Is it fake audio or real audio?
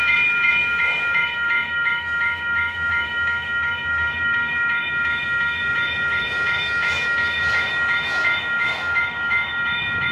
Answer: fake